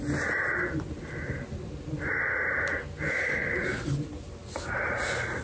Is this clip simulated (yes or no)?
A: no